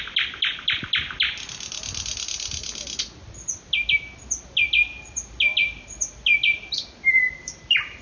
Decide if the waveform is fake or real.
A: real